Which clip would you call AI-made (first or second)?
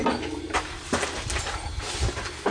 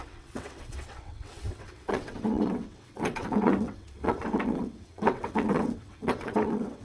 second